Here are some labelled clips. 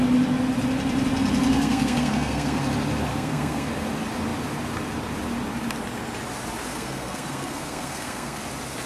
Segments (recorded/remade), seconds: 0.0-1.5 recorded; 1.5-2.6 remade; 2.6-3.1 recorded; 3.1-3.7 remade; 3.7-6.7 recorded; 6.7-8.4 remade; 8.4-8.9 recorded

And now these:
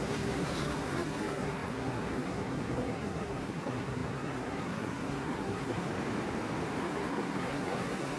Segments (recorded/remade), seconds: 0.0-5.9 remade; 5.9-6.8 recorded; 6.8-8.2 remade

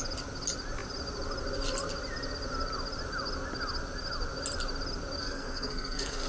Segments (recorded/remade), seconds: 0.0-5.2 recorded; 5.2-6.3 remade

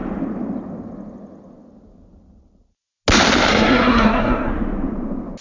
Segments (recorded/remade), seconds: 0.0-3.5 recorded; 3.5-4.5 remade; 4.5-5.4 recorded

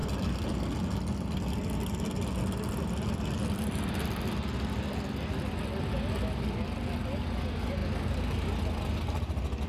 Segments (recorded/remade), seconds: 0.0-9.7 recorded